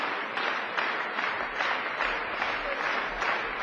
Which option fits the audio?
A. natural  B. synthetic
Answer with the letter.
A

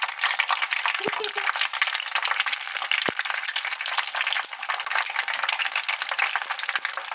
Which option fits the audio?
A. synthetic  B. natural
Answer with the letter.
B